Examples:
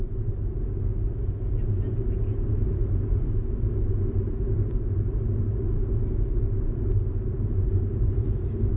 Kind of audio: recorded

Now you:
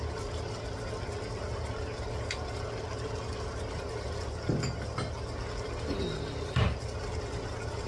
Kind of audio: recorded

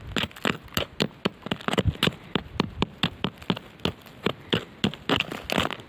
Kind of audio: recorded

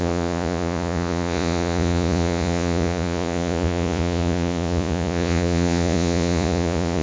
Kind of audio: remade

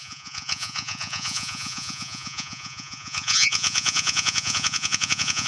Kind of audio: remade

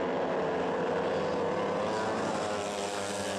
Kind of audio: recorded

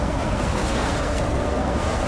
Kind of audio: remade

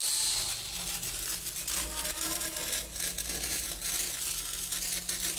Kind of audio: recorded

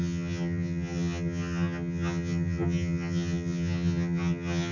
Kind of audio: remade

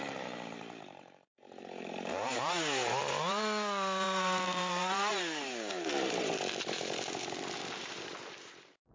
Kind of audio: remade